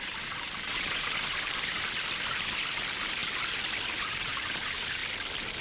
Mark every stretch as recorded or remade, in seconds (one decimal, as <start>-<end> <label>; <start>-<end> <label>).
0.0-1.7 remade; 1.7-2.7 recorded; 2.7-3.2 remade; 3.2-4.0 recorded; 4.0-5.0 remade; 5.0-5.6 recorded